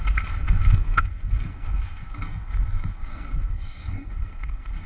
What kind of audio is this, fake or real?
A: fake